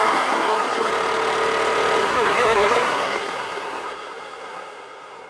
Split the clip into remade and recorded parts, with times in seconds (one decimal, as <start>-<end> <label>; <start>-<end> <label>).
0.0-0.9 remade; 0.9-2.0 recorded; 2.0-5.3 remade